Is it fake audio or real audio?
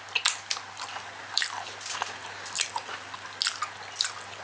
real